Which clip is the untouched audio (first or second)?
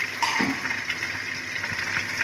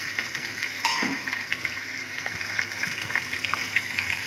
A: first